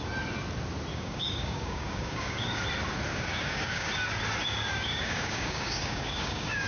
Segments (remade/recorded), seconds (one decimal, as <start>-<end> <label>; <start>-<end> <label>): 0.0-0.9 recorded; 0.9-2.4 remade; 2.4-3.1 recorded; 3.1-3.9 remade; 3.9-4.4 recorded; 4.4-6.7 remade